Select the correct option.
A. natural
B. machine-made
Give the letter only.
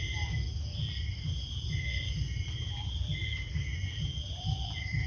A